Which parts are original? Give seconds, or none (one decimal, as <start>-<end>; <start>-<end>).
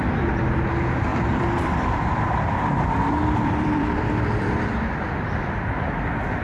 0.0-1.1; 4.5-6.4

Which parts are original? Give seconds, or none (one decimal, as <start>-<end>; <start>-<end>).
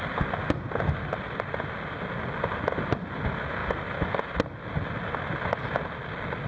0.0-3.6; 4.2-6.5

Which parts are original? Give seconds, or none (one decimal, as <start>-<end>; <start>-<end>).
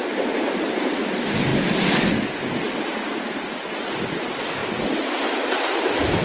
1.5-3.3; 4.6-5.6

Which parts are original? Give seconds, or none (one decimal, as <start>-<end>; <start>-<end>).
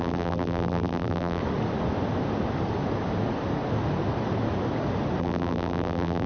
1.4-5.2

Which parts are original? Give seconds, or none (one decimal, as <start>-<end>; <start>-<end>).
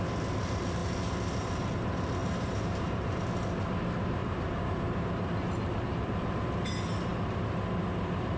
0.0-2.2; 3.3-4.2; 6.0-8.4